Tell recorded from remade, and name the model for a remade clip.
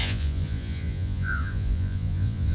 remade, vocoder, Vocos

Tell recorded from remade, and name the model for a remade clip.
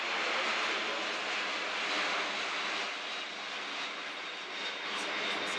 recorded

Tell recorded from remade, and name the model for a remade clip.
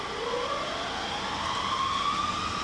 recorded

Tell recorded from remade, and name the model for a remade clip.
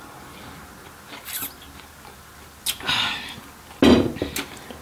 recorded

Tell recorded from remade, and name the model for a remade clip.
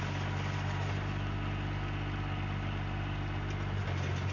recorded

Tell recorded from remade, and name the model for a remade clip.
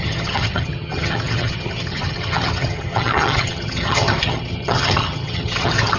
remade, vocoder, HiFi-GAN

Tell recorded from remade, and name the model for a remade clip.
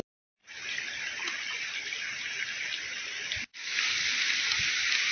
recorded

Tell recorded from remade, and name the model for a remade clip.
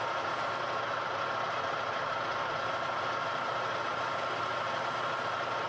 recorded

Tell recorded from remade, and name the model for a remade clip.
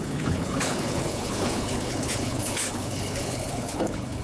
remade, codec, HILCodec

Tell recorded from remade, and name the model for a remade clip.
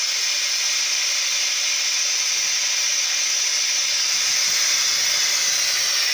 recorded